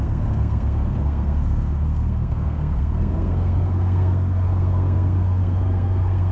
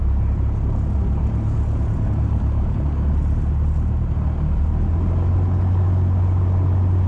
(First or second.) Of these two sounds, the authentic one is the second